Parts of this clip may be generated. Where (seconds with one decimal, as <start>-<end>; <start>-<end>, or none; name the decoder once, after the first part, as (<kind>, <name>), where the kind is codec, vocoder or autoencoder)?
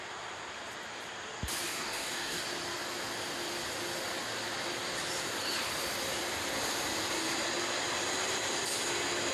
1.7-2.4 (codec, DAC)